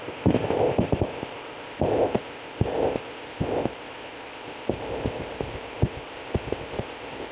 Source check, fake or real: fake